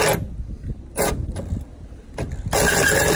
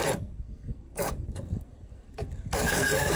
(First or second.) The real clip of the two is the first